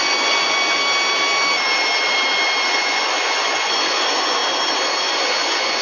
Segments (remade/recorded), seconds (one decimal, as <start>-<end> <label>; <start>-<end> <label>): 0.0-0.8 remade; 0.8-2.7 recorded; 2.7-4.4 remade; 4.4-5.0 recorded; 5.0-5.8 remade